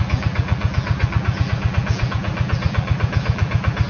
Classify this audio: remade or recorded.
remade